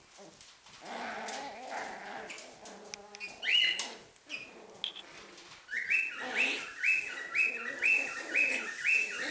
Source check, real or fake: real